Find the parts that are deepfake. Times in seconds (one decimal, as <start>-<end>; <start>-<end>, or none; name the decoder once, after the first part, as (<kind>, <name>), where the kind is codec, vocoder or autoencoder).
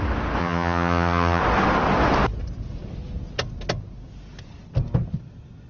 0.4-1.4 (vocoder, HiFi-GAN)